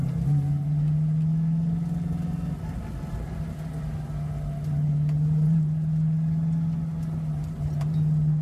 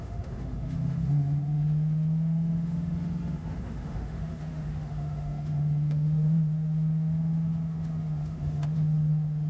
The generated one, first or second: second